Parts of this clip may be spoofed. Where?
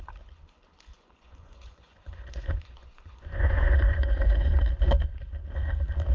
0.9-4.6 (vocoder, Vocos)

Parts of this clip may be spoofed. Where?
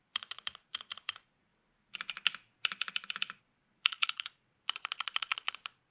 0.0-1.5 (vocoder, Vocos); 3.4-5.9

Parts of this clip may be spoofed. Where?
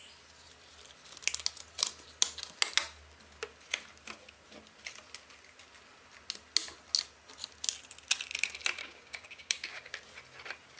8.8-9.9 (codec, DAC)